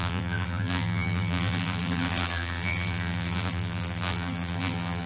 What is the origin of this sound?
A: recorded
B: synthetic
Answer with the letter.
B